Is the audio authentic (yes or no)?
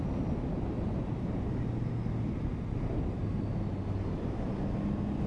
yes